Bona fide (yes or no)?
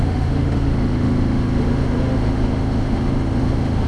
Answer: no